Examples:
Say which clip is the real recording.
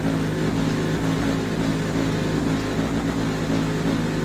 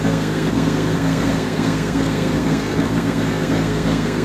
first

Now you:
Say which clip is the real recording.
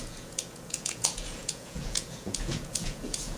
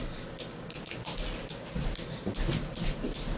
second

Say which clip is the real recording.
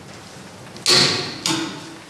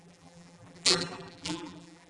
first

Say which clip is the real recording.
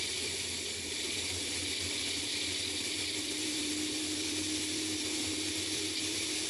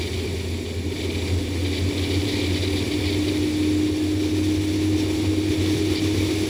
second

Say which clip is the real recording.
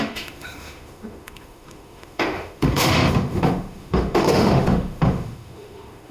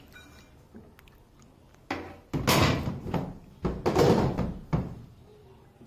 second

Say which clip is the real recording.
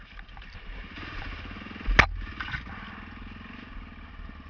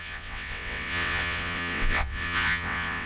first